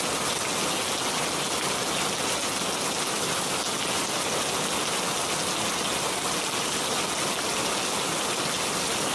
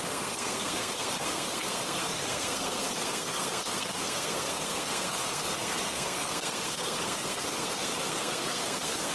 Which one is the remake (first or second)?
second